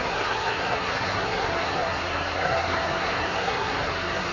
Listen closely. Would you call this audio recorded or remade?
remade